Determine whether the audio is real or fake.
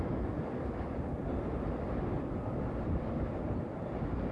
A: real